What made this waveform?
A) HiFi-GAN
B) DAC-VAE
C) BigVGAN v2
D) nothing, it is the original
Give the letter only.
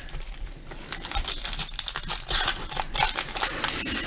D